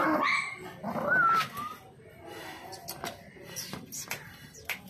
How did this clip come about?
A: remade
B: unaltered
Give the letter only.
B